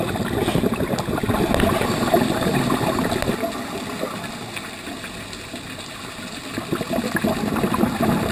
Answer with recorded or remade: recorded